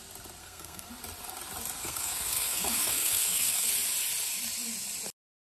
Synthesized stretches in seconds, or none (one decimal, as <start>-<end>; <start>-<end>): 0.4-0.9; 1.8-3.7